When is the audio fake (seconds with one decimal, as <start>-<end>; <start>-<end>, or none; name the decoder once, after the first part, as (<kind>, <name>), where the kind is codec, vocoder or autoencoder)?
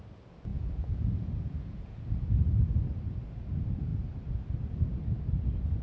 0.5-2.4 (vocoder, Vocos)